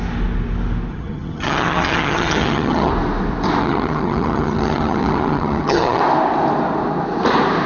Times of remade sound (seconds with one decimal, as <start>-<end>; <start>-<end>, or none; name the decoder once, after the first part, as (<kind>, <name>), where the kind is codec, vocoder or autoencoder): 0.9-2.9 (vocoder, HiFi-GAN); 3.6-6.0